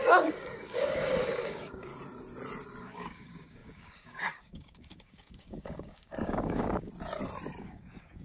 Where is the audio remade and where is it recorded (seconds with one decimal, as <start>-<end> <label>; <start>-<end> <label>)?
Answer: 0.0-1.9 remade; 1.9-2.8 recorded; 2.8-6.9 remade; 6.9-7.6 recorded; 7.6-8.2 remade